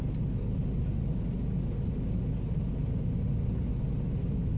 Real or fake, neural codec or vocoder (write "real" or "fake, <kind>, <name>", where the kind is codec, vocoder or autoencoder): real